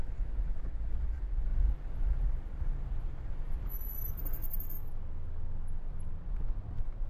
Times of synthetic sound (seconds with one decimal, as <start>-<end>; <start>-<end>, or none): 1.5-3.7